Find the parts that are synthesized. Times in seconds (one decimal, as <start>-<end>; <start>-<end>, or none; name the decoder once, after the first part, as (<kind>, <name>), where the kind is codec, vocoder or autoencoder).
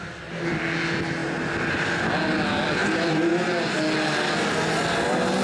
none